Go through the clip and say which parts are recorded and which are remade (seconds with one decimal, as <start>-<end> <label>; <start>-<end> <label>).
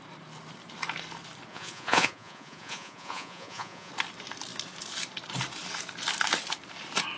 0.0-1.5 recorded; 1.5-3.9 remade; 3.9-7.2 recorded